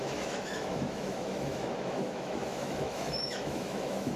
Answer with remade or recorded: remade